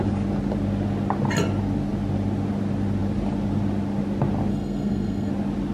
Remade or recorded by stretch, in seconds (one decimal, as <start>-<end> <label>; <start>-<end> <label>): 0.0-4.5 recorded; 4.5-5.3 remade; 5.3-5.7 recorded